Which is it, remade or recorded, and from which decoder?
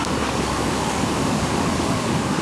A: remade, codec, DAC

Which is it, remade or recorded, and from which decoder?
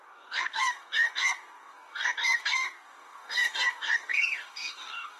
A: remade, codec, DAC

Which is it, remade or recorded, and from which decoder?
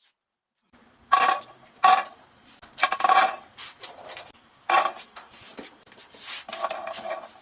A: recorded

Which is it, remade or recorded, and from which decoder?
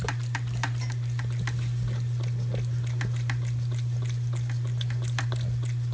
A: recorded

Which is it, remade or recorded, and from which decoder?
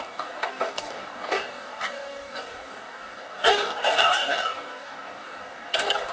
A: remade, codec, DAC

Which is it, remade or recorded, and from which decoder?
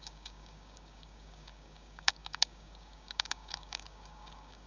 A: remade, codec, DAC